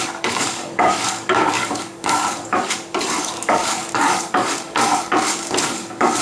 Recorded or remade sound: remade